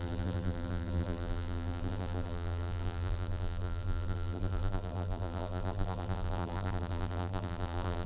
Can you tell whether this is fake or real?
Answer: fake